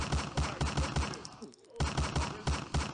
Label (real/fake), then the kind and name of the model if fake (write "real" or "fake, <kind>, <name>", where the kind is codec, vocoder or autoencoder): real